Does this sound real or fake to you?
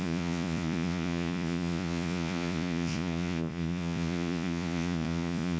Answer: fake